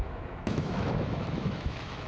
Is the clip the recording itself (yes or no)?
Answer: no